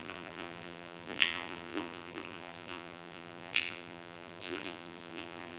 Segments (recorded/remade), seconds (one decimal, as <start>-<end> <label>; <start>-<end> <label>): 0.0-5.6 remade